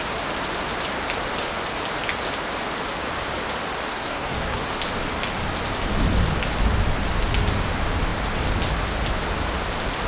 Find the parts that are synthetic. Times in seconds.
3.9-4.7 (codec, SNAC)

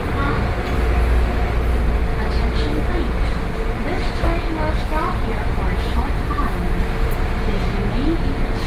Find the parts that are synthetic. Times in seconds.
none

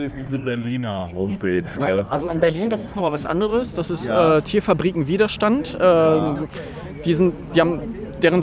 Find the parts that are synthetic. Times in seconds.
0.0-3.5 (codec, SNAC)